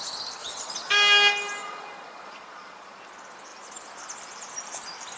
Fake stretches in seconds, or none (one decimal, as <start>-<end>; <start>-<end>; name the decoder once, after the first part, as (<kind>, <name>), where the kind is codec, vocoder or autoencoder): 0.4-0.9 (vocoder, Vocos); 1.6-3.0